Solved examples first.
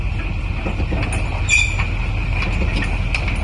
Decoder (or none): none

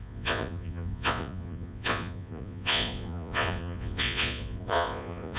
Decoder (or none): vocoder, Vocos